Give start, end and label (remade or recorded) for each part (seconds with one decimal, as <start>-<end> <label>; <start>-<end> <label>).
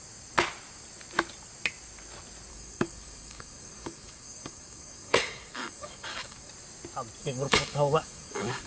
0.0-2.5 recorded; 2.5-6.5 remade; 6.5-7.2 recorded; 7.2-8.7 remade